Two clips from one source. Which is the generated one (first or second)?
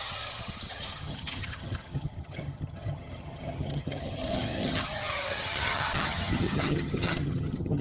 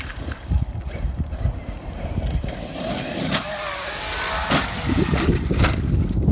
first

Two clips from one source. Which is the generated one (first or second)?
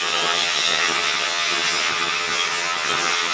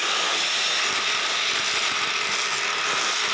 first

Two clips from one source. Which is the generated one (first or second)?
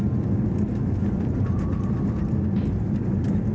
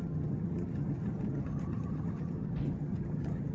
second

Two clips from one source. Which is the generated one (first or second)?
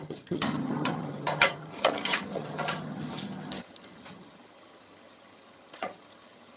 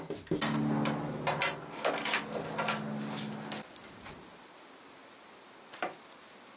first